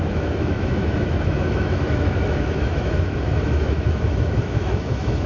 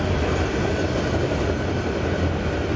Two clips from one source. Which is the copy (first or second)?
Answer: first